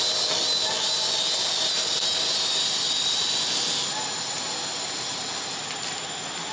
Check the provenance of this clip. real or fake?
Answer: real